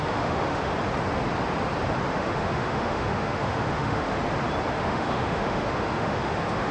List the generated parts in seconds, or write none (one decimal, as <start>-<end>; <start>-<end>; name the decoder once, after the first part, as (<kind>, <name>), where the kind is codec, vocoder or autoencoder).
0.0-0.7 (autoencoder, DAC-VAE); 2.1-4.1; 4.7-6.7